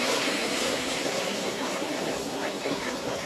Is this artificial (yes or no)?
yes